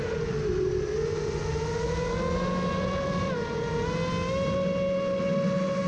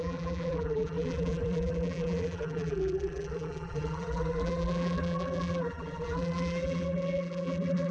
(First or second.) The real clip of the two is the first